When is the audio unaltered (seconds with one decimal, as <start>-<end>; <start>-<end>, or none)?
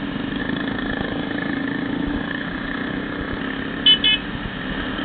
0.0-0.4; 3.4-5.0